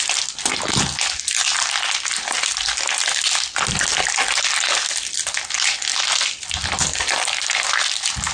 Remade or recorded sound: recorded